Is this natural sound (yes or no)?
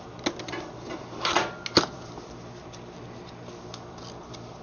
yes